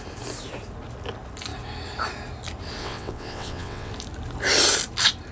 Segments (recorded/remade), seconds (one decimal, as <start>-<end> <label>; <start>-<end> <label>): 0.0-2.8 recorded; 2.8-3.9 remade; 3.9-5.3 recorded